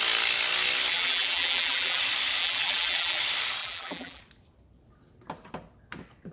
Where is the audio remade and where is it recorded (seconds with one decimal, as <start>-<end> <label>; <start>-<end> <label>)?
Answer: 0.0-0.9 recorded; 0.9-2.0 remade; 2.0-2.4 recorded; 2.4-3.2 remade; 3.2-3.6 recorded; 3.6-4.2 remade; 4.2-6.3 recorded